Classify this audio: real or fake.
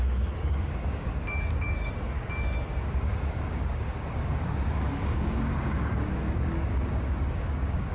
fake